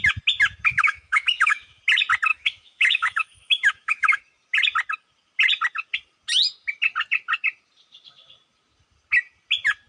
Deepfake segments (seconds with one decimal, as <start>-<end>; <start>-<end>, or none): 0.7-1.8; 2.3-4.2